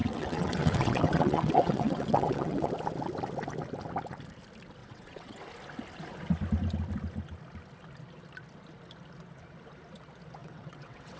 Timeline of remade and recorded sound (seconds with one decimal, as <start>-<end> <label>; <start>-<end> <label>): 0.0-2.7 remade; 2.7-4.8 recorded; 4.8-5.4 remade; 5.4-10.4 recorded; 10.4-11.2 remade

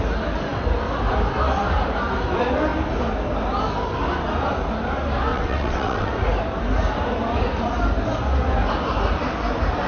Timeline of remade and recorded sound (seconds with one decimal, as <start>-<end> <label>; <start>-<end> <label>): 0.0-5.3 recorded; 5.3-6.1 remade; 6.1-9.9 recorded

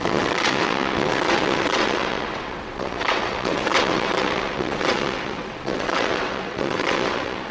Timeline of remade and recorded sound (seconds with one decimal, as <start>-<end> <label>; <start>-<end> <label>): 0.0-7.5 remade